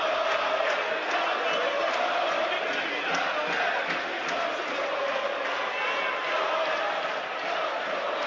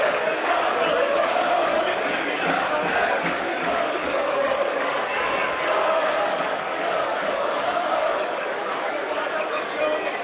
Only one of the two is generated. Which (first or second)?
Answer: second